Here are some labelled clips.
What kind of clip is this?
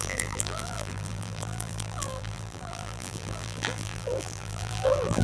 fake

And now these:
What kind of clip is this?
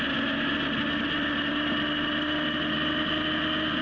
real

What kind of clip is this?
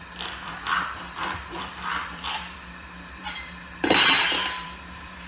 fake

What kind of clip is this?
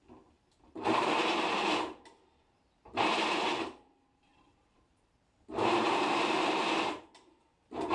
fake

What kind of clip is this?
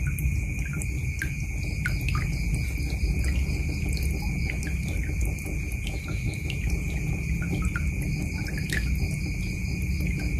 real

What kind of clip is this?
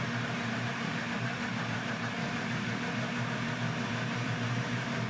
fake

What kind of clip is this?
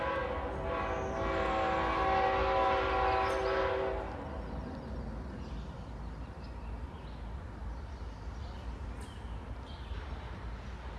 real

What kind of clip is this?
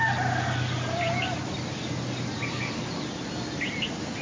real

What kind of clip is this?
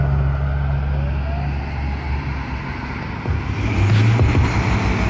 real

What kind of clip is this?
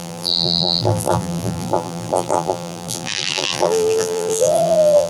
fake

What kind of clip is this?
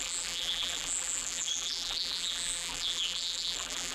fake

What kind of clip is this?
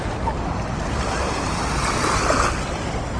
real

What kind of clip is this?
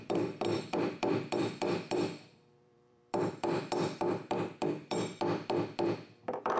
fake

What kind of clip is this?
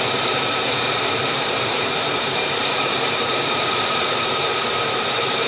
fake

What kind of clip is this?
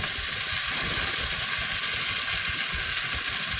real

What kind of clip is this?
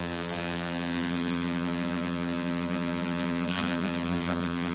fake